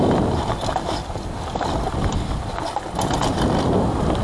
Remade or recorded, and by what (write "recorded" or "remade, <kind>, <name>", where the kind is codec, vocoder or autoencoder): recorded